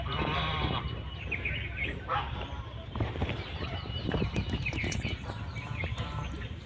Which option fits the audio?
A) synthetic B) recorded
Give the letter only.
A